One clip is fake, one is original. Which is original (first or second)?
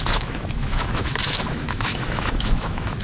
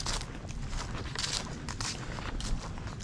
second